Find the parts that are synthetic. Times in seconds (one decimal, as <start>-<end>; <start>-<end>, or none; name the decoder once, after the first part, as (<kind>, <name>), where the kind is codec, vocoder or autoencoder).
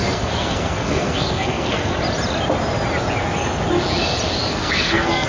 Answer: 0.0-1.9 (codec, SNAC); 4.5-5.3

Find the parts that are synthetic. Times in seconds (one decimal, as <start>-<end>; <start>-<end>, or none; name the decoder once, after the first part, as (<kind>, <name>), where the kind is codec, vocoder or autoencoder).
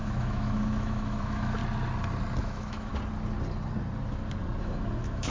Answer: 0.0-1.6 (autoencoder, DAC-VAE); 2.4-2.9; 4.6-5.3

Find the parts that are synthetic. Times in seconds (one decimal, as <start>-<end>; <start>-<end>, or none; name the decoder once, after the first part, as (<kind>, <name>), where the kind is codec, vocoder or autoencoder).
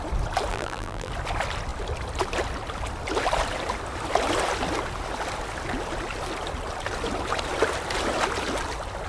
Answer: 0.5-1.1 (vocoder, BigVGAN v2)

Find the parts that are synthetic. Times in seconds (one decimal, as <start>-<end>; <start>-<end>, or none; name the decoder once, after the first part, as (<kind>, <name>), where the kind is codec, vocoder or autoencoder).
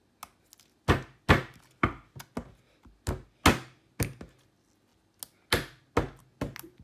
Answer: none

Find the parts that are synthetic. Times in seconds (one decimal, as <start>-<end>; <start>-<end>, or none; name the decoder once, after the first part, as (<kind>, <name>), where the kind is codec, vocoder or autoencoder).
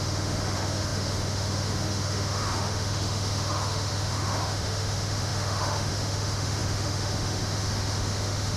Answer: 0.0-8.6 (autoencoder, DAC-VAE)